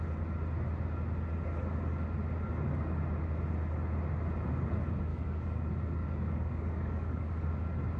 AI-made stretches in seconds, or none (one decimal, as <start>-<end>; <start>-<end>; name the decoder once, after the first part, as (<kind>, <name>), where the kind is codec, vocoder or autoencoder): 5.1-7.5 (codec, DAC)